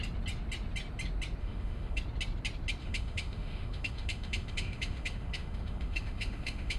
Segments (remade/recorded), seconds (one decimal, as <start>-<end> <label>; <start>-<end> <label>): 0.0-1.4 recorded; 1.4-2.0 remade; 2.0-2.8 recorded; 2.8-6.8 remade